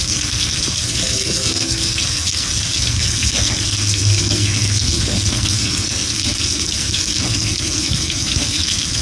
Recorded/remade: remade